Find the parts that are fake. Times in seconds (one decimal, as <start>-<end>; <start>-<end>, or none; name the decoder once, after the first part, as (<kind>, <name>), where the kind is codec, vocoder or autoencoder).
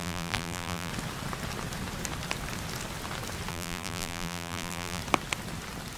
0.0-0.9 (vocoder, BigVGAN v2); 3.5-5.0